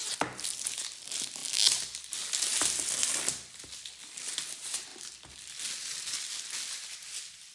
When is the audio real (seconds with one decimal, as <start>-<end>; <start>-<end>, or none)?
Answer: 0.0-7.5